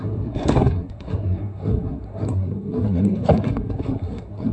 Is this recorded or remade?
remade